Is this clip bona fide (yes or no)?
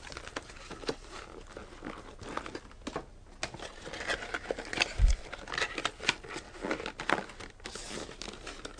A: yes